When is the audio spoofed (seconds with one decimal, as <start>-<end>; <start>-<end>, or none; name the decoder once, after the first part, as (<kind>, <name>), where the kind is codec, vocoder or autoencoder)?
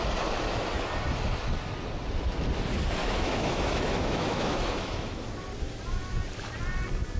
3.0-5.2 (autoencoder, DAC-VAE)